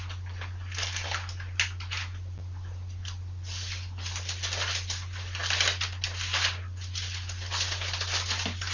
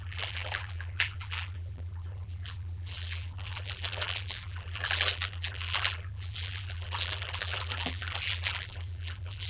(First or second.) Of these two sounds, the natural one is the first